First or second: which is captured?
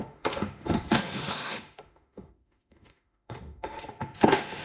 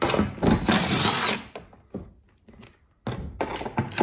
second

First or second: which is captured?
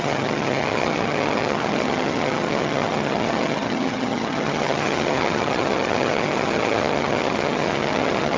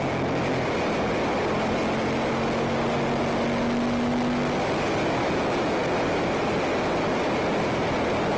second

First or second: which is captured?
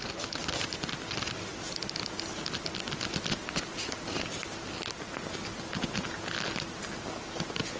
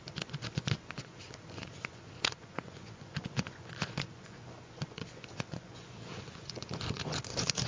first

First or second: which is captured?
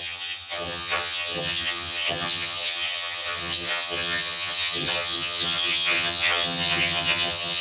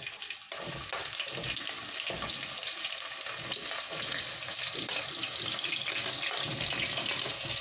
second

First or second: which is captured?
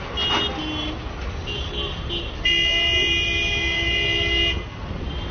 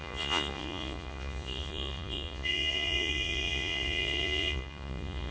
first